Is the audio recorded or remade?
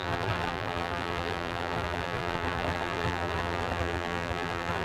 remade